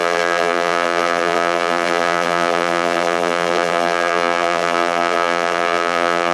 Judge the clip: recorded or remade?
remade